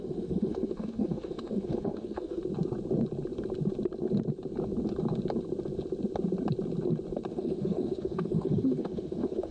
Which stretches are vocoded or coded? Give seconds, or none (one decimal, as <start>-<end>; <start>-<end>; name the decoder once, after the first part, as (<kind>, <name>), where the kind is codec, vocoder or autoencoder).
0.0-2.4 (autoencoder, DAC-VAE); 7.3-9.5